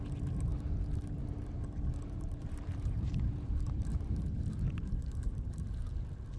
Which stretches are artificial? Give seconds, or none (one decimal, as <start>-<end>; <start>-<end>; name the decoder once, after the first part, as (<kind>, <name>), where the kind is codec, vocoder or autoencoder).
2.0-5.8 (vocoder, BigVGAN v2)